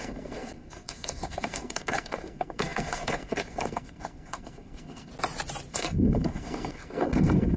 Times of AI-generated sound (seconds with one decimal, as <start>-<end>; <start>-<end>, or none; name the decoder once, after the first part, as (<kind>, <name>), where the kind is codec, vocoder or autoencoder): 0.0-5.1 (codec, SNAC); 5.7-7.6